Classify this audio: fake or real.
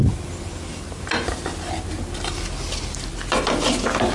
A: real